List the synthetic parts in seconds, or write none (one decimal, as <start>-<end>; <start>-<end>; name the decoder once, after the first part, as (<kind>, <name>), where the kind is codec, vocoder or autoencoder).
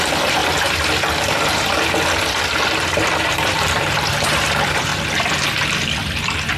0.0-0.4 (vocoder, BigVGAN v2); 3.3-4.9